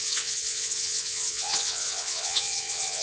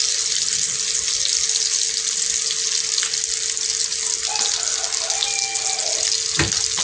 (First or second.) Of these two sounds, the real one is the second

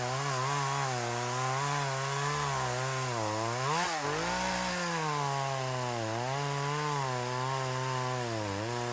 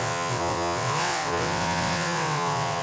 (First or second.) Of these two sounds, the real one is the first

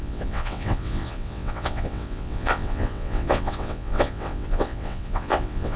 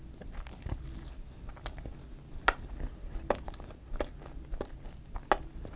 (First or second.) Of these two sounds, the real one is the second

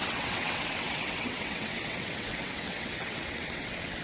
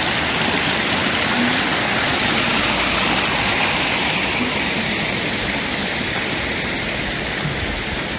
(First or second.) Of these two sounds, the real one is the second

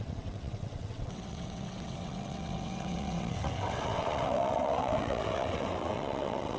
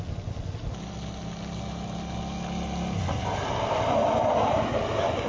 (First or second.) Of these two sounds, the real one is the second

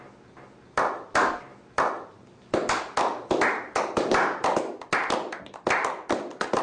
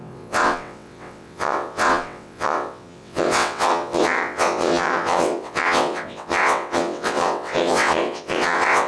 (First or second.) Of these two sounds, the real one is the first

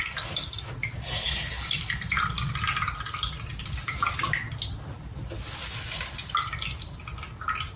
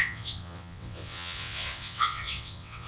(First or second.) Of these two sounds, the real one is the first